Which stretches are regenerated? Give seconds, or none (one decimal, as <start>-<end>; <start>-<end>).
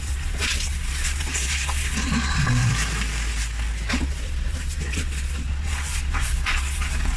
0.0-2.6; 3.9-7.2